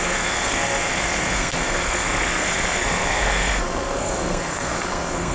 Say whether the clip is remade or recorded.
remade